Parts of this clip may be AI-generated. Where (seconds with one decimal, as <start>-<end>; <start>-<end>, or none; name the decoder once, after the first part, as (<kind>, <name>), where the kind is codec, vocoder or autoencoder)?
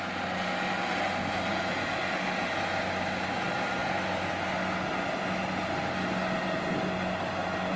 none